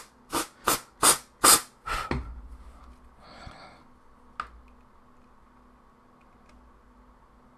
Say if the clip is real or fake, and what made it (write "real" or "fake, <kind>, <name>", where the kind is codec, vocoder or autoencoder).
real